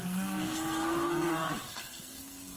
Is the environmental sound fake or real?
fake